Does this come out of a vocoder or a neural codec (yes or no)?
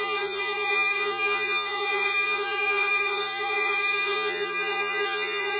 yes